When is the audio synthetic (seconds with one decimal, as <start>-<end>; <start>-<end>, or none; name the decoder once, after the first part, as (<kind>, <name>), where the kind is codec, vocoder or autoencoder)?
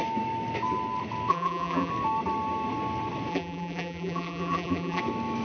1.3-1.9 (vocoder, BigVGAN v2); 3.3-5.0